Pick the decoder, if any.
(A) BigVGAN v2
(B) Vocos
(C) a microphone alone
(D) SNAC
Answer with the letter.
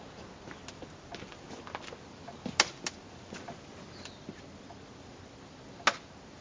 C